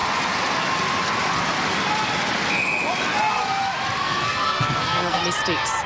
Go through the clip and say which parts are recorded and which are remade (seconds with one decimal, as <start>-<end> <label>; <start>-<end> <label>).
0.0-4.0 recorded; 4.0-5.2 remade; 5.2-5.9 recorded